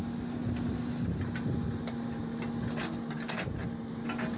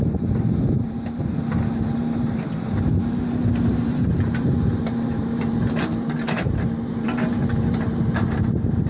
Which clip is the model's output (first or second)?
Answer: second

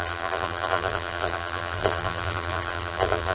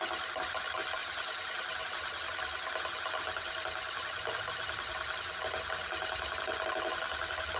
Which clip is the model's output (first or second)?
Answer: first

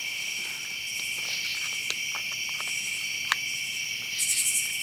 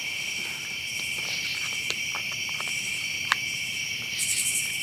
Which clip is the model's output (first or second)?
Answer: second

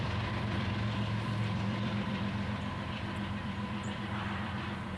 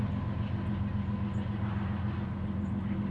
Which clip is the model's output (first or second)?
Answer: first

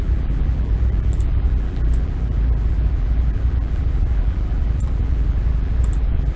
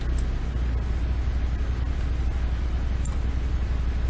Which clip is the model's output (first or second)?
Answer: first